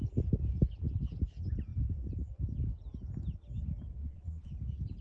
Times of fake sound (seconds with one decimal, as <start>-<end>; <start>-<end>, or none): 4.0-4.5